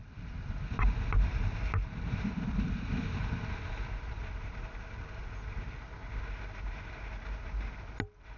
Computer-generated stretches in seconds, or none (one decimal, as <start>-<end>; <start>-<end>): 0.0-0.5